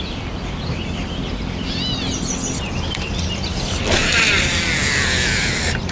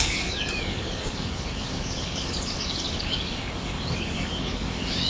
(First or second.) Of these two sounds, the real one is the first